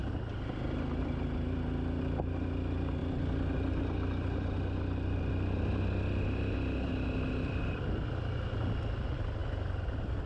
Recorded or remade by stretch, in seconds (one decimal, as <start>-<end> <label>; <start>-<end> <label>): 0.0-10.3 recorded